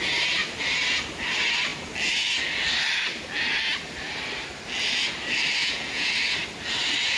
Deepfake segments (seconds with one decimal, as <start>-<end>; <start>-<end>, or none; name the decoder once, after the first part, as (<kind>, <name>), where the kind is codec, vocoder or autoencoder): 5.6-6.1 (vocoder, Vocos)